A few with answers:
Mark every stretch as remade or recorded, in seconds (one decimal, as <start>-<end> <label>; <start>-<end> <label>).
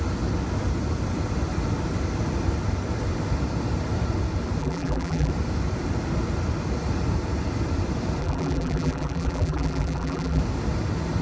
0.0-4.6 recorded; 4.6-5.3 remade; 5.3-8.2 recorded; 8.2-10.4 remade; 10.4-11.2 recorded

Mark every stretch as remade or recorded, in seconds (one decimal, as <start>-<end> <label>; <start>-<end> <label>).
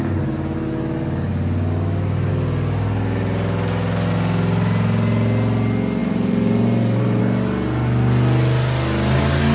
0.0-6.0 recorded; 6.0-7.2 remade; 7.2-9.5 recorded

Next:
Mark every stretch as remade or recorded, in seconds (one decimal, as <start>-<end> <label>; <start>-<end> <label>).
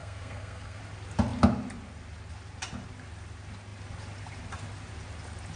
0.0-0.8 remade; 0.8-5.6 recorded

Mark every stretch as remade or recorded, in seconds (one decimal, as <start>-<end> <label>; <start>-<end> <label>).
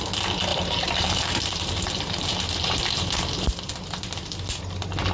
0.0-0.5 recorded; 0.5-3.6 remade; 3.6-5.1 recorded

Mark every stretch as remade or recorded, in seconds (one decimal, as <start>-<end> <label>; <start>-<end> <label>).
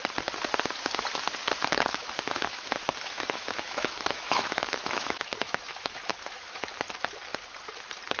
0.0-1.9 recorded; 1.9-6.8 remade; 6.8-8.2 recorded